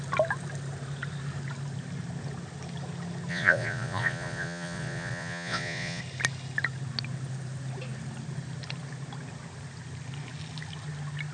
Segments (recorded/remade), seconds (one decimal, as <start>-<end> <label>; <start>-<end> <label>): 0.0-3.3 recorded; 3.3-6.0 remade; 6.0-11.3 recorded